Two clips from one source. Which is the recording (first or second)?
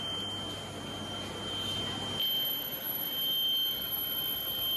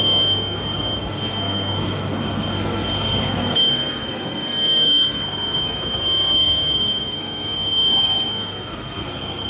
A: first